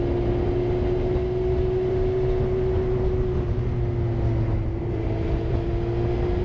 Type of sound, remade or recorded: recorded